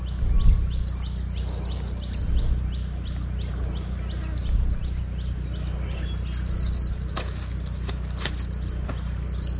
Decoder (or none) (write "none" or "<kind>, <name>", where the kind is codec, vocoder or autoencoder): none